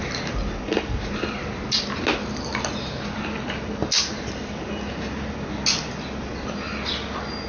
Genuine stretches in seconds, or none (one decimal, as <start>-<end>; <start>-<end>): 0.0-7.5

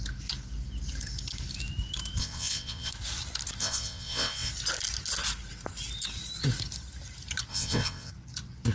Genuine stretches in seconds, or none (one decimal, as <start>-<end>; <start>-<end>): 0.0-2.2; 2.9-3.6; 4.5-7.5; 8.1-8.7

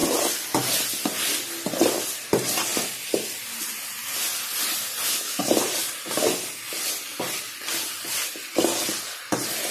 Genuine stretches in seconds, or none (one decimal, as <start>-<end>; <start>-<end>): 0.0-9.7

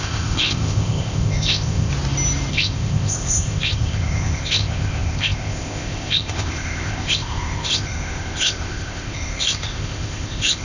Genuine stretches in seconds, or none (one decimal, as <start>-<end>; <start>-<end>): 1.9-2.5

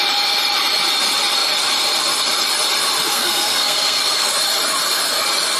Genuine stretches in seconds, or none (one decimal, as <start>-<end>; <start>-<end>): 0.0-3.1; 4.3-5.6

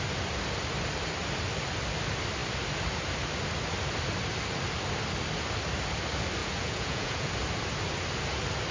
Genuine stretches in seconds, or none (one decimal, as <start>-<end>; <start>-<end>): 0.0-6.4; 7.3-8.7